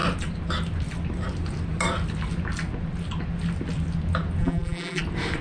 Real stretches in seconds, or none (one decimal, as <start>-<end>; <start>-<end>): 0.0-4.4; 5.0-5.4